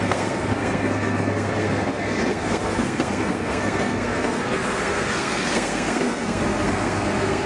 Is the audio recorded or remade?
remade